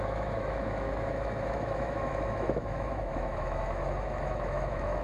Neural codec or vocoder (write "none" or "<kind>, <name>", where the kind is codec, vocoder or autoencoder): autoencoder, DAC-VAE